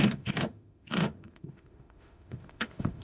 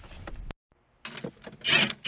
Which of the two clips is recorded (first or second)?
second